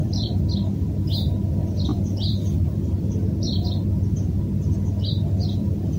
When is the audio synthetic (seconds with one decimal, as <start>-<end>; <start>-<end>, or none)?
0.0-0.9; 1.9-3.1; 5.4-6.0